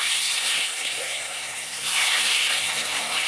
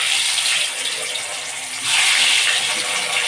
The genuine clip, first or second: second